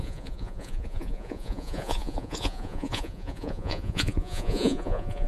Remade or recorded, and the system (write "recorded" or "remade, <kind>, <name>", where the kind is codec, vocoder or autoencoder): remade, vocoder, Vocos